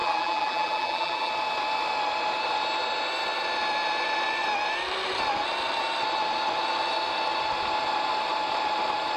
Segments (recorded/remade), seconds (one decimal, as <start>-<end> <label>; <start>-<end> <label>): 0.0-1.3 remade; 1.3-9.2 recorded